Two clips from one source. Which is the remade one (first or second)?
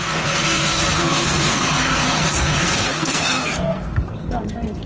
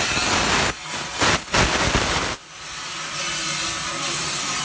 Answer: first